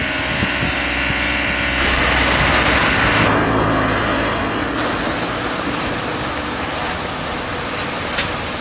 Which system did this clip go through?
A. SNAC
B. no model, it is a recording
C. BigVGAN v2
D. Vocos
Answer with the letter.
B